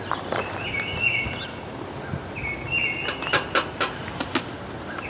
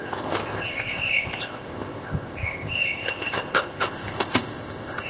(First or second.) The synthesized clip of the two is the second